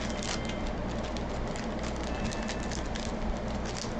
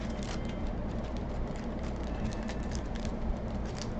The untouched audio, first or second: first